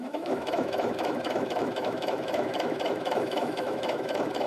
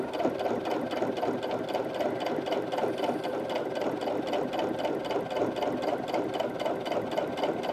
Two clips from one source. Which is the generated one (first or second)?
first